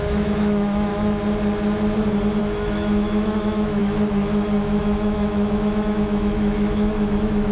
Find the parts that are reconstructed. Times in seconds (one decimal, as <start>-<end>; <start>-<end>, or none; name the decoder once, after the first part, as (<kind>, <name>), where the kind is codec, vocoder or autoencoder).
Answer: 0.0-0.9 (autoencoder, DAC-VAE); 2.4-7.5